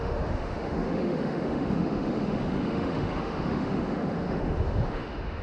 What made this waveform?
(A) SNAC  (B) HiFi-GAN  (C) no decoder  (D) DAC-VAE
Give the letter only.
D